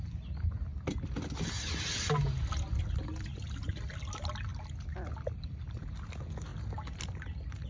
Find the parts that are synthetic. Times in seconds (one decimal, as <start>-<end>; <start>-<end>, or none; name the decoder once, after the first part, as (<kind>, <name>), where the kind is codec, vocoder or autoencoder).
none